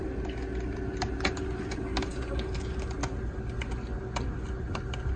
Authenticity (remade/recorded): recorded